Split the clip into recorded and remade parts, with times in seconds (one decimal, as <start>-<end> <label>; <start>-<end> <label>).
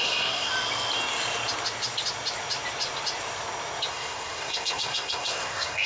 0.0-0.5 remade; 0.5-3.9 recorded; 3.9-5.9 remade